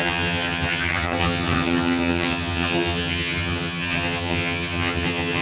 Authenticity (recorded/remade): remade